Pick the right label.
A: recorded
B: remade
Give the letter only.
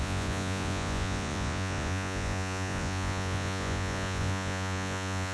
B